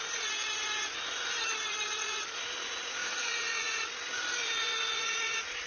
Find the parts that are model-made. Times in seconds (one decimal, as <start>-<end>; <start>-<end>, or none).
3.0-3.8